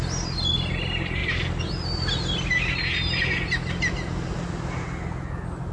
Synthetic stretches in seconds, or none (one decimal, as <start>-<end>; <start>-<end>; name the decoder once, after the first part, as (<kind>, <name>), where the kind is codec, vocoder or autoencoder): none

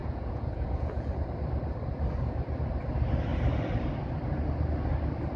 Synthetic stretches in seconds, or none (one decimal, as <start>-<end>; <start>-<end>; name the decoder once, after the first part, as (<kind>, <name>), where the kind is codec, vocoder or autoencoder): 0.0-1.1 (vocoder, Vocos)

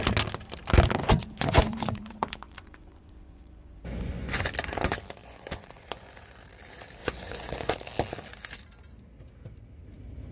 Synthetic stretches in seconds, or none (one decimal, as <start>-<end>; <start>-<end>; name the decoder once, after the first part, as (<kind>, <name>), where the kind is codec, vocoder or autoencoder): 1.0-4.5 (vocoder, Vocos); 5.2-6.4; 7.0-7.7

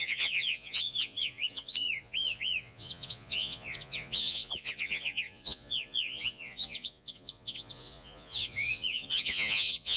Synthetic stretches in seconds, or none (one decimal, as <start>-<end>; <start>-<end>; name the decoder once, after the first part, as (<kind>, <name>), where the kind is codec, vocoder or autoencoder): 0.0-10.0 (vocoder, Vocos)

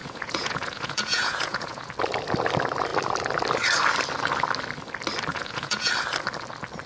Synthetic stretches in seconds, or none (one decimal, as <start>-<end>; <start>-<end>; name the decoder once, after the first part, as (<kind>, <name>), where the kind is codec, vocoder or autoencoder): 0.0-1.9 (vocoder, Vocos); 5.3-5.9

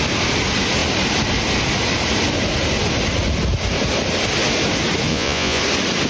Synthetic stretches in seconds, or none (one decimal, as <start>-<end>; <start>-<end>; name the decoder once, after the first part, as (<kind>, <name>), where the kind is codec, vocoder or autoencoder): 5.1-5.6 (vocoder, Vocos)